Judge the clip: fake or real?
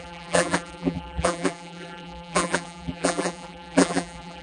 fake